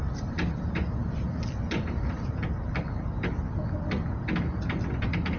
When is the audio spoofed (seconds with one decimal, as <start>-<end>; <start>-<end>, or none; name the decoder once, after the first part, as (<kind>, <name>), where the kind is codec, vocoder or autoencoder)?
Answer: none